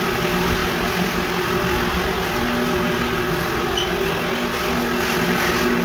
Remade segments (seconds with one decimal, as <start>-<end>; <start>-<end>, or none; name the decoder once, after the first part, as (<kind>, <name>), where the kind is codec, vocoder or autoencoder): none